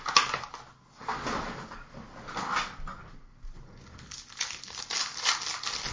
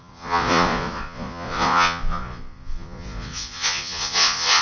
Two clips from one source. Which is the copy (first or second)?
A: second